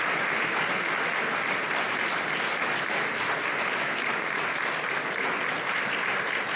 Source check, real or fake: real